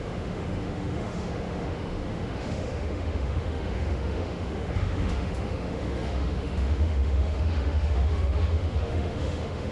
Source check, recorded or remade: remade